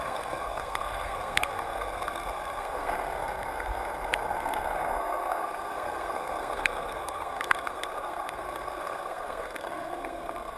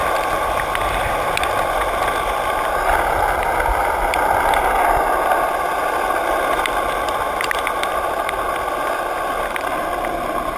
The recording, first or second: second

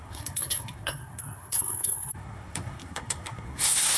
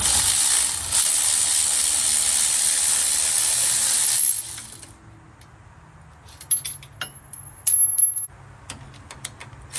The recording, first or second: second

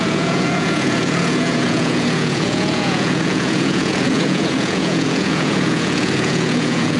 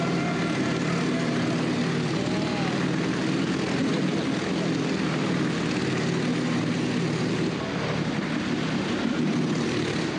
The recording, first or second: second